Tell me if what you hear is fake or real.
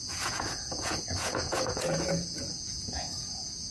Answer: fake